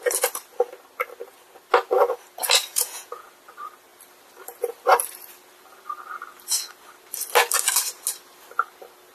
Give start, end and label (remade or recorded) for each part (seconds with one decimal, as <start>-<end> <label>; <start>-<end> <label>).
0.0-2.7 recorded; 2.7-3.3 remade; 3.3-9.1 recorded